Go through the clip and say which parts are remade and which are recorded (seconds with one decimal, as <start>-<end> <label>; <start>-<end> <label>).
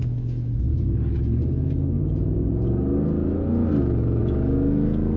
0.0-0.7 remade; 0.7-3.8 recorded; 3.8-5.2 remade